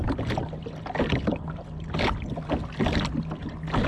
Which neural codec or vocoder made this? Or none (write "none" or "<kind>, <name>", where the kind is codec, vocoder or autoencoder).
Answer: none